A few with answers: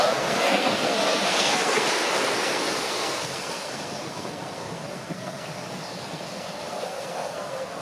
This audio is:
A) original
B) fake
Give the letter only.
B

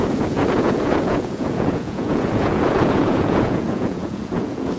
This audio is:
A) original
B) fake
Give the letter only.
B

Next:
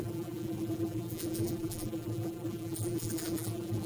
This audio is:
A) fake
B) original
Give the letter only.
A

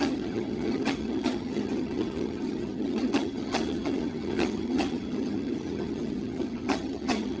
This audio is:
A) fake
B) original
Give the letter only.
A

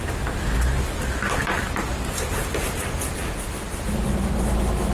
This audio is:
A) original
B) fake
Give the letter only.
A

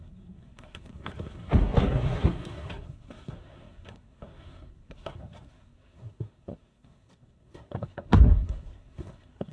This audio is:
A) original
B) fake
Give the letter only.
B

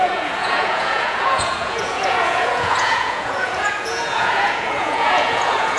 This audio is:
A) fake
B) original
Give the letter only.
A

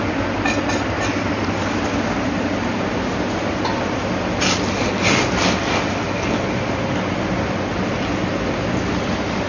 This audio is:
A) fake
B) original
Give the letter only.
B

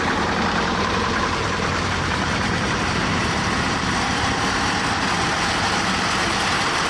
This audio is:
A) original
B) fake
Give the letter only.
B